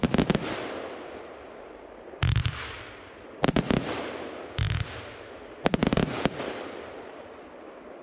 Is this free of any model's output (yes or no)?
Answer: yes